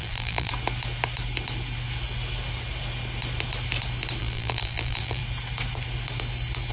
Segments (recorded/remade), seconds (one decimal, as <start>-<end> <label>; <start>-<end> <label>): 0.0-0.5 remade; 0.5-4.2 recorded; 4.2-5.2 remade; 5.2-6.7 recorded

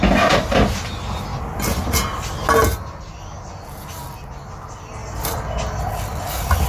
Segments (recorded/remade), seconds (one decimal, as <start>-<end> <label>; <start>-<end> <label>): 0.0-6.7 recorded

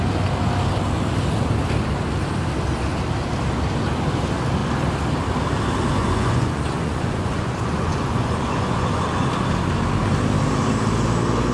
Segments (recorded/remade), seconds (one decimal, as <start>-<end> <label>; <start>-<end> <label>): 0.0-6.0 recorded; 6.0-9.3 remade; 9.3-11.5 recorded

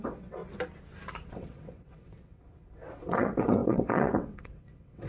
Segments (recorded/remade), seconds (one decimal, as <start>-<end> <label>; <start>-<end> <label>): 0.0-0.4 remade; 0.4-1.3 recorded; 1.3-5.1 remade

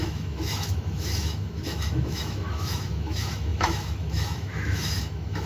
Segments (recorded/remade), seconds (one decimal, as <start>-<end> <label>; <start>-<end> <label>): 0.0-5.5 remade

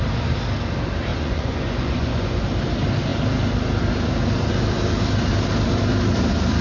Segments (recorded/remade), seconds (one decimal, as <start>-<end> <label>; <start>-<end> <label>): 0.0-1.1 recorded; 1.1-2.4 remade; 2.4-6.6 recorded